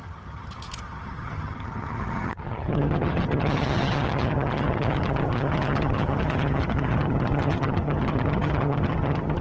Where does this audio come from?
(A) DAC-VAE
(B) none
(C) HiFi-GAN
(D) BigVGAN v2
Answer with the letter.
C